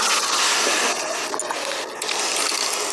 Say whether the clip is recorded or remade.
recorded